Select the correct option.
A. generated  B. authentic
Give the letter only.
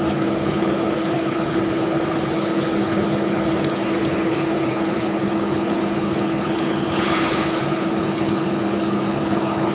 A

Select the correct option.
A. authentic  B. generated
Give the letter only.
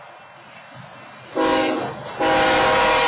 A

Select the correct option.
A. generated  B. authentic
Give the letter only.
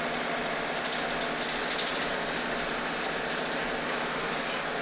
B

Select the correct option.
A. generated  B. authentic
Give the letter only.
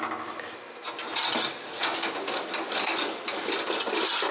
B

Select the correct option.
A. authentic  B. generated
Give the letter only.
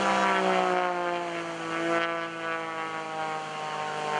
A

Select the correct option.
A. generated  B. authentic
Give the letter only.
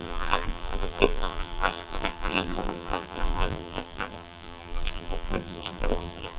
A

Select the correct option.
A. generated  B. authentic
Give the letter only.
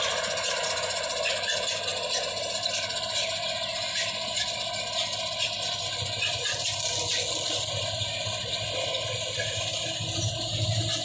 B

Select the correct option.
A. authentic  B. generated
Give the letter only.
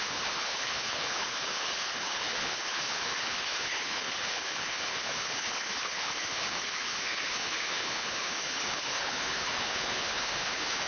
B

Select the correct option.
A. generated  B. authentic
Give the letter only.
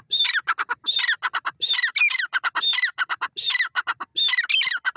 B